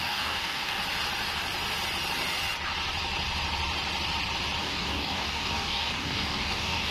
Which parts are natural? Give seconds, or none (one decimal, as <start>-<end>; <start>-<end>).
0.8-4.6